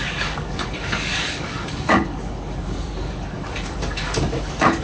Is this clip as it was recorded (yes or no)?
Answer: no